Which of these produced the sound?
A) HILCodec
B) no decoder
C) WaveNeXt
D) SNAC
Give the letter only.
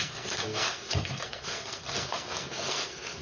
D